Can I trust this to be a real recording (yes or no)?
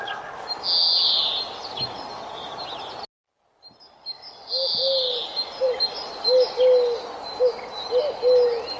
yes